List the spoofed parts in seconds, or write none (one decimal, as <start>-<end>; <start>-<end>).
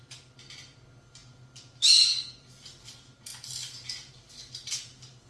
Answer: none